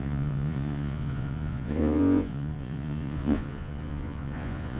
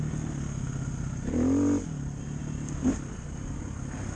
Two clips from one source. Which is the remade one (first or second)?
first